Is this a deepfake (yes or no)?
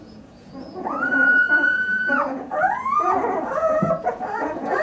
yes